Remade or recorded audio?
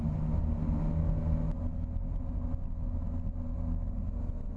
recorded